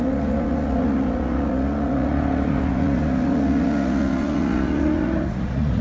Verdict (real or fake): fake